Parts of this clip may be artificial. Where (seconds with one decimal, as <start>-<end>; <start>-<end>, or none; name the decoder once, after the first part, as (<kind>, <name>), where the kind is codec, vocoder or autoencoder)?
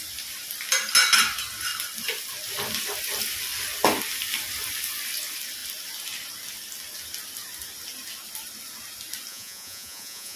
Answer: 9.3-10.4 (vocoder, Vocos)